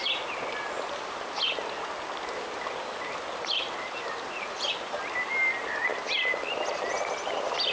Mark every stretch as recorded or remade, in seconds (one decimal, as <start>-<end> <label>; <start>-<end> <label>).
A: 0.0-7.7 recorded